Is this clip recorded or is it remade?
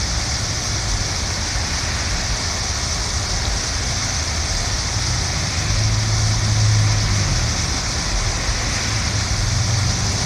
recorded